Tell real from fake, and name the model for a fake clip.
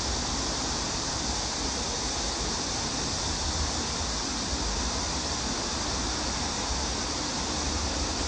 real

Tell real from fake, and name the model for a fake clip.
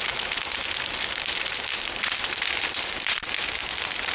real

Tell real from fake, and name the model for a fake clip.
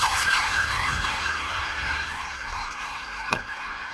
fake, codec, SNAC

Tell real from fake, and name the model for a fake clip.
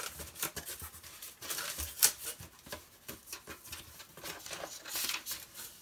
real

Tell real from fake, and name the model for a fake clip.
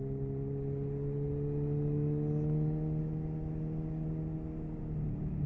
real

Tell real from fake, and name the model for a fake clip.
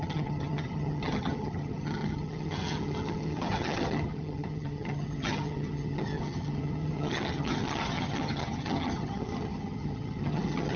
fake, vocoder, HiFi-GAN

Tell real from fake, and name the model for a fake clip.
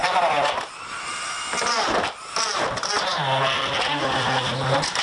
real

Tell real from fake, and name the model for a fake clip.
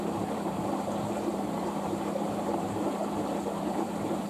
fake, vocoder, BigVGAN v2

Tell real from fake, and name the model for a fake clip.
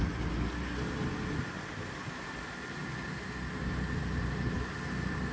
real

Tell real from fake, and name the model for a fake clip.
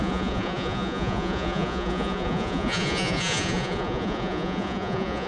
fake, vocoder, Vocos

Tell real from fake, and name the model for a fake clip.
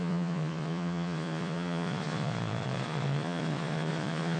fake, vocoder, Vocos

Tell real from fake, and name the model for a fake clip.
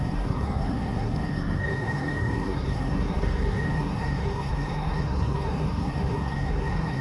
fake, codec, SNAC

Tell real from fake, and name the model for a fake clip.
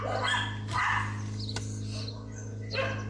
real